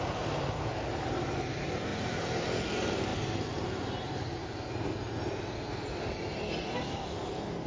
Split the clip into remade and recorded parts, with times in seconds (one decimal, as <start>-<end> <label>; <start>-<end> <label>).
0.0-7.7 recorded